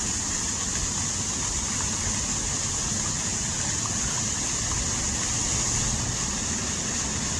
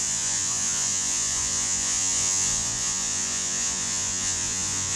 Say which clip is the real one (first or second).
first